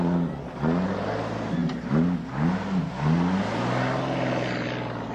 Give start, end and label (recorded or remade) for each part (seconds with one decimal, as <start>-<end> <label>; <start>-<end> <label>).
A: 0.0-5.1 recorded